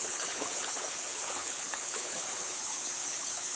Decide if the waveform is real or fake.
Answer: fake